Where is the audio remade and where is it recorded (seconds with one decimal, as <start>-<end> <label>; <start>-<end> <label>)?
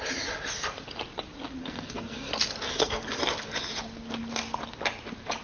0.0-1.6 recorded; 1.6-2.3 remade; 2.3-2.7 recorded; 2.7-3.2 remade; 3.2-5.4 recorded